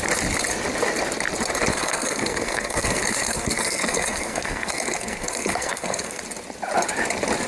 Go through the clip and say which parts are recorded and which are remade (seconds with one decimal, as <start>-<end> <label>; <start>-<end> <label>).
0.0-1.7 recorded; 1.7-6.2 remade; 6.2-7.5 recorded